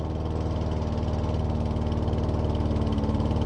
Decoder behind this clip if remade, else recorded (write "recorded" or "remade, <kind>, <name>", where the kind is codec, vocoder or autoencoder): recorded